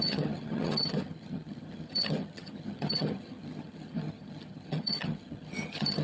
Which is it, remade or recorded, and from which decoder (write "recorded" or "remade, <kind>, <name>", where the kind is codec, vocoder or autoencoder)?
remade, vocoder, HiFi-GAN